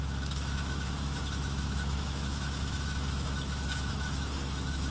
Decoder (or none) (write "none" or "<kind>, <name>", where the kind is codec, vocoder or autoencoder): autoencoder, DAC-VAE